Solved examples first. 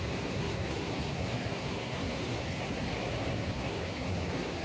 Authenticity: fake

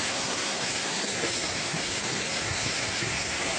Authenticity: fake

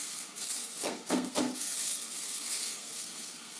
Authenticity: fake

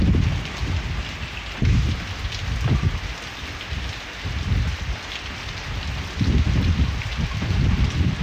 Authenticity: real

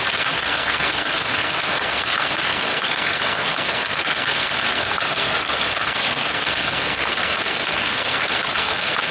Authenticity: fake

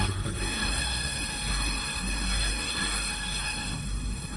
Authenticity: fake